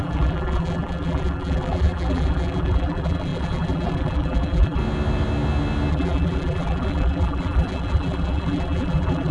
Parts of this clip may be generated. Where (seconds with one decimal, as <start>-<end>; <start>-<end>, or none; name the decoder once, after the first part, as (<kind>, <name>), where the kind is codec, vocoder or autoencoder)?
0.0-4.8 (vocoder, BigVGAN v2); 5.9-9.3